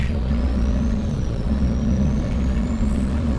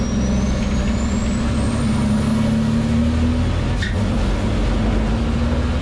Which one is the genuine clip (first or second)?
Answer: second